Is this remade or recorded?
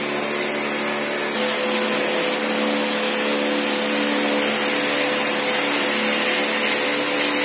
recorded